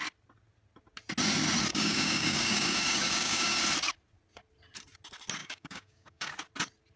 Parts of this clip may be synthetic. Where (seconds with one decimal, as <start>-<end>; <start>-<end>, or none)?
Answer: 1.7-3.6; 5.4-6.3